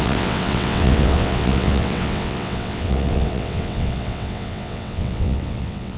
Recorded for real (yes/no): no